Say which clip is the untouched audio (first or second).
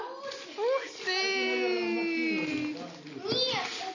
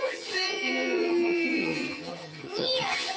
first